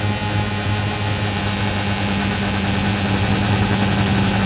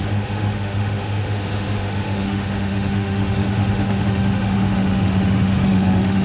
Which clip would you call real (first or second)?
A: first